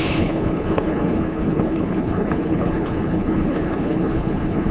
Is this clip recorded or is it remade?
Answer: remade